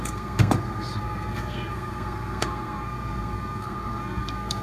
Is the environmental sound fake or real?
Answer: fake